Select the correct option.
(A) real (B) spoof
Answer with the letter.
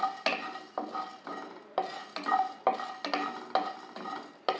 A